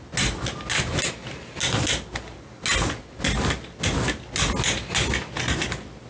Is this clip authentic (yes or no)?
yes